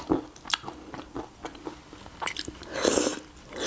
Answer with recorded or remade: recorded